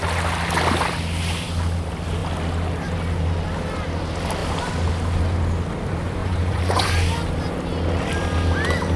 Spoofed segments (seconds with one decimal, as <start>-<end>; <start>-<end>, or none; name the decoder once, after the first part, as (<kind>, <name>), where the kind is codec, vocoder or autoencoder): 6.2-6.9 (vocoder, Vocos)

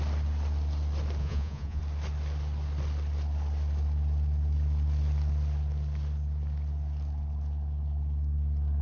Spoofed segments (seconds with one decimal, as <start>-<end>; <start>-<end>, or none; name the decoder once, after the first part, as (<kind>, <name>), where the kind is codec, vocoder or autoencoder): 1.2-1.8 (vocoder, Vocos)

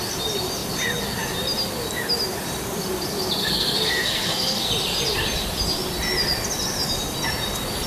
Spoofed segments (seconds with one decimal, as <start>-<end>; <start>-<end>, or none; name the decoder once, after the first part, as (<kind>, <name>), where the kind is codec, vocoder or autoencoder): 3.4-4.7 (codec, SNAC)

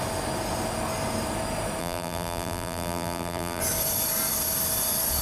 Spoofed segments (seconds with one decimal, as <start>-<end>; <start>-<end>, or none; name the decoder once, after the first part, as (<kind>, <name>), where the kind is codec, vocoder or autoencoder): 1.8-3.6 (vocoder, BigVGAN v2)

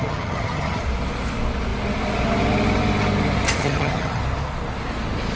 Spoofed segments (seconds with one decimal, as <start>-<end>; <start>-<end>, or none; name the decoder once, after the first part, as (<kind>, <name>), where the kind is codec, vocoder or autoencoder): 0.0-0.8 (vocoder, HiFi-GAN); 3.6-4.2

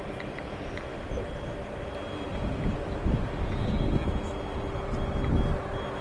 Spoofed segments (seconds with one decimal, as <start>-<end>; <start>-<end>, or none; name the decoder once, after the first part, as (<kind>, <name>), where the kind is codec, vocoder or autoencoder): none